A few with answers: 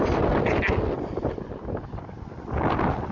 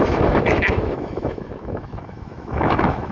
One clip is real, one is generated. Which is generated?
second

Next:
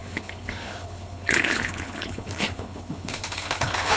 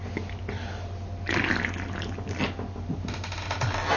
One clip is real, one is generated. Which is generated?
first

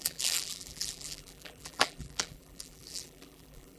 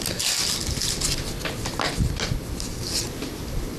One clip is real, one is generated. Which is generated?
first